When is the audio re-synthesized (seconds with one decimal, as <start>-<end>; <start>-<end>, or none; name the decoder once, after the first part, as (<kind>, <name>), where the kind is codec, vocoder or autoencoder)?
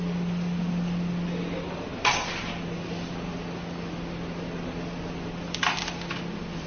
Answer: none